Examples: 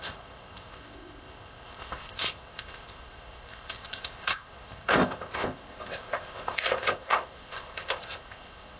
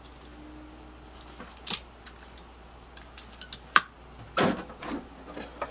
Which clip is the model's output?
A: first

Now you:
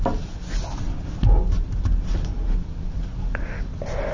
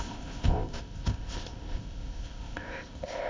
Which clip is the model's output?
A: second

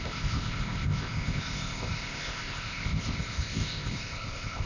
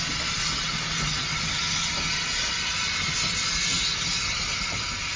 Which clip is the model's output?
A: first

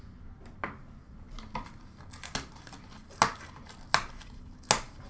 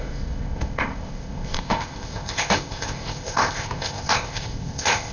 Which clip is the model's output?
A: second